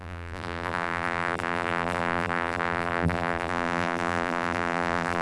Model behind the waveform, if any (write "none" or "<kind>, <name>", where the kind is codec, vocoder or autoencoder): vocoder, BigVGAN v2